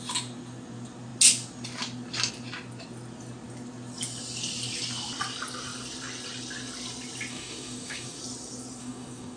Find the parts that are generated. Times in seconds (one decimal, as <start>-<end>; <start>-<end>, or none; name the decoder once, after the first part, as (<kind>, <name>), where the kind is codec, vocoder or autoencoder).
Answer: 7.3-8.2 (codec, DAC); 8.8-9.4